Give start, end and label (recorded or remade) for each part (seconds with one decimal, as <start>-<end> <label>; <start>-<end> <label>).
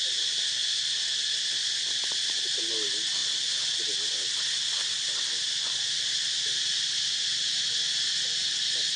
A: 0.0-9.0 recorded